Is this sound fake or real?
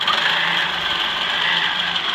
real